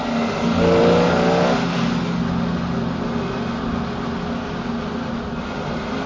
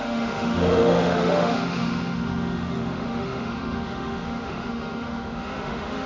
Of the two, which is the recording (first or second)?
first